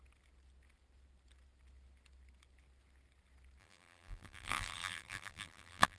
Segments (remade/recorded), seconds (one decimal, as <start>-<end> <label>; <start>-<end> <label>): 0.0-3.6 recorded; 3.6-6.0 remade